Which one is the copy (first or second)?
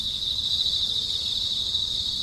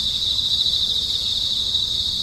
first